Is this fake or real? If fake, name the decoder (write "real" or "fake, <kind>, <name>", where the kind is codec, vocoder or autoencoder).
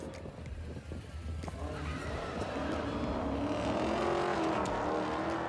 real